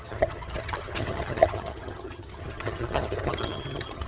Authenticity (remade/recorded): remade